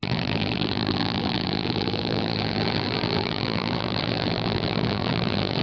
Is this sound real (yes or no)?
no